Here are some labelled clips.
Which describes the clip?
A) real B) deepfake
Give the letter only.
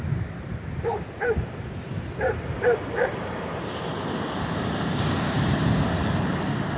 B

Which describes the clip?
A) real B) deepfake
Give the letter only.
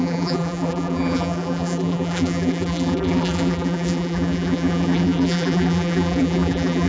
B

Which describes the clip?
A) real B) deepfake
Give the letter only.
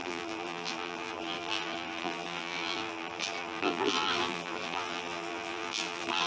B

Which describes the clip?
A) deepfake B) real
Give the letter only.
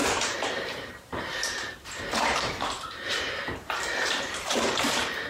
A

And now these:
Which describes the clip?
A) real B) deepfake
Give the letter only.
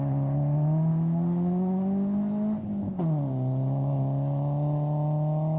A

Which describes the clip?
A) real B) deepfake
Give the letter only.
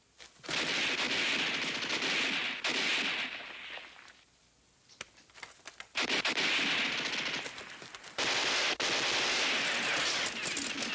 A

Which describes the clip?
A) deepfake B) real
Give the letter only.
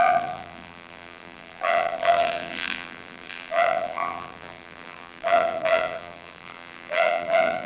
A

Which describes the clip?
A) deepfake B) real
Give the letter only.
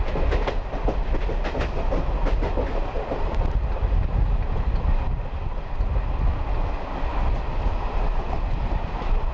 B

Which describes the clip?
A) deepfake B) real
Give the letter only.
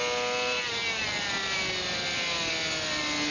B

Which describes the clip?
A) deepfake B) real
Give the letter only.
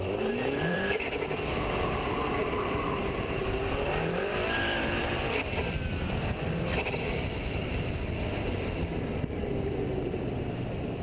A